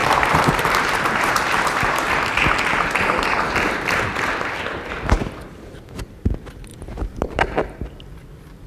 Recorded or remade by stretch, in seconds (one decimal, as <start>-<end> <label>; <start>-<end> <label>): 0.0-2.1 remade; 2.1-6.7 recorded; 6.7-7.4 remade; 7.4-8.7 recorded